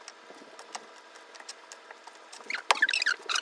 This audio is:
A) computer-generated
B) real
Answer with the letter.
B